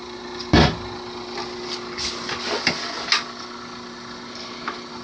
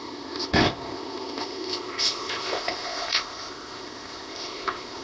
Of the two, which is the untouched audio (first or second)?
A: first